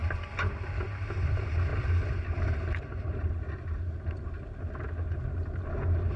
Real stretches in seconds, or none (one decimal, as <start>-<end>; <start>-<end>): 0.0-6.2